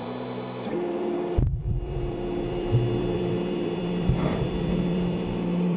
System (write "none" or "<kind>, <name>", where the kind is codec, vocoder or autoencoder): vocoder, BigVGAN v2